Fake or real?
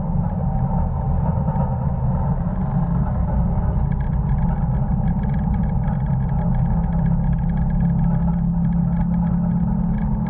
real